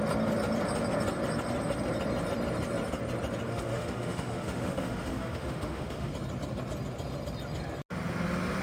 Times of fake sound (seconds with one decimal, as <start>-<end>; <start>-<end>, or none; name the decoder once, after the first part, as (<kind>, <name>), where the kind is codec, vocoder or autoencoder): 3.5-6.1 (autoencoder, DAC-VAE)